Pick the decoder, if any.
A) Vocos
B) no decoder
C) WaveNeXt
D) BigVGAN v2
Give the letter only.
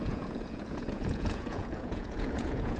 A